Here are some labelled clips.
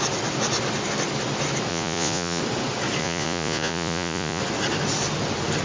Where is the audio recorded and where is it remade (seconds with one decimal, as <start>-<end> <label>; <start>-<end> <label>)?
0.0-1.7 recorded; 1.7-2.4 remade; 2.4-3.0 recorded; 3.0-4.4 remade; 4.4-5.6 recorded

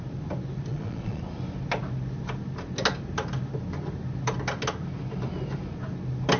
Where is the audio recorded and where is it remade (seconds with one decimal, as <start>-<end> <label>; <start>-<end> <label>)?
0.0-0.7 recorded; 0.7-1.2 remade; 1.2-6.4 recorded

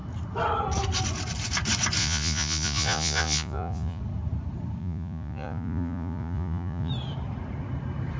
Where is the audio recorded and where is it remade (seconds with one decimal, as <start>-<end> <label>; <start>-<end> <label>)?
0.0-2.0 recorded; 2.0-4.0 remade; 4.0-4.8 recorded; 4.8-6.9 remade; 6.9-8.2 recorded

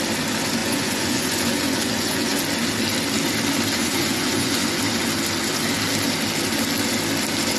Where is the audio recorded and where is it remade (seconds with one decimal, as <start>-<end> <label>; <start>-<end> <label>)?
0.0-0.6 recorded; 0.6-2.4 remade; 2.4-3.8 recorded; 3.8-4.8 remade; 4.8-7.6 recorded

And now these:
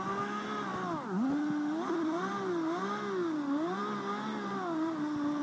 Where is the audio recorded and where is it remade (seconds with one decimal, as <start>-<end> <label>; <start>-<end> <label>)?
0.0-5.4 recorded